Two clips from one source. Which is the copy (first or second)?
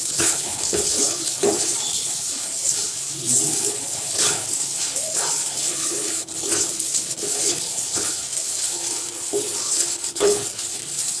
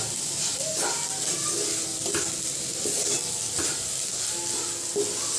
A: first